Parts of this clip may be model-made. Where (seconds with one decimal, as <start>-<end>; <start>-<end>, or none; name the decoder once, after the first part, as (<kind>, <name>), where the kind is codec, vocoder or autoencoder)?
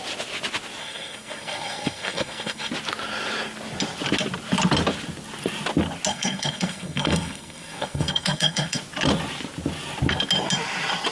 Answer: 0.8-2.7 (codec, SNAC); 6.1-8.8